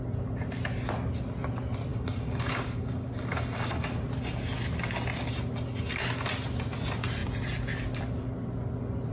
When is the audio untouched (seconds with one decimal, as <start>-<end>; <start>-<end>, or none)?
0.0-1.9; 4.0-9.1